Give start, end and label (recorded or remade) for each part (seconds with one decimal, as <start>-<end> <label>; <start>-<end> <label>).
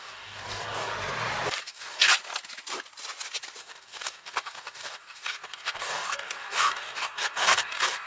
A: 0.0-0.9 remade; 0.9-1.6 recorded; 1.6-2.1 remade; 2.1-3.6 recorded; 3.6-8.1 remade